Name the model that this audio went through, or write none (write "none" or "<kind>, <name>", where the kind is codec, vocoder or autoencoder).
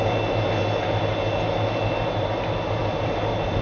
none